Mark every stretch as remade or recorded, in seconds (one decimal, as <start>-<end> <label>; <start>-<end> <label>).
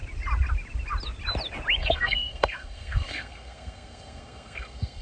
0.0-1.8 recorded; 1.8-5.0 remade